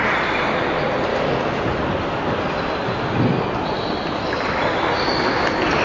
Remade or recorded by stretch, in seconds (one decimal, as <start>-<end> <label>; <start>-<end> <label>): 0.0-5.8 recorded